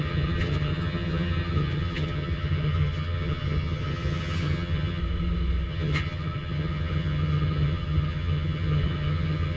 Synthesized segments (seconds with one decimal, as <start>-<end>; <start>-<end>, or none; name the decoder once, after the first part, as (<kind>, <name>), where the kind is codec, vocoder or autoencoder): 0.0-5.0 (vocoder, HiFi-GAN); 5.7-9.6